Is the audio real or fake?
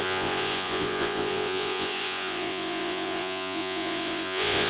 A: fake